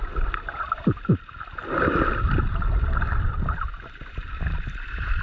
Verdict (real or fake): fake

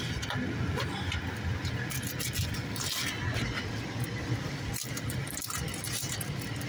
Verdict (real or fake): real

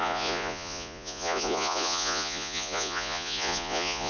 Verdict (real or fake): fake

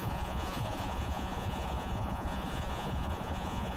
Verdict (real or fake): fake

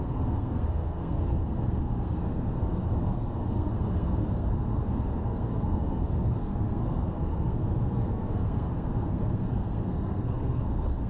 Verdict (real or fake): fake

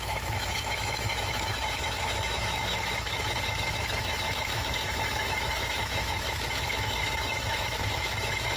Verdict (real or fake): fake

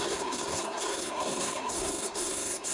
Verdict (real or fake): fake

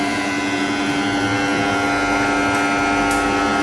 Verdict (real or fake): real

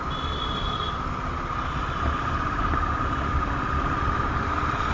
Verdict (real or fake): real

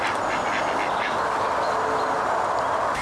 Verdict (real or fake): real